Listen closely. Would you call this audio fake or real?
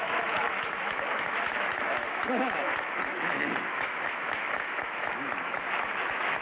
fake